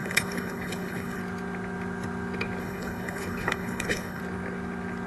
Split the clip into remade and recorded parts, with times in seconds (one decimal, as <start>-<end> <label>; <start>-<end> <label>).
0.0-1.2 remade; 1.2-2.6 recorded; 2.6-4.2 remade; 4.2-5.1 recorded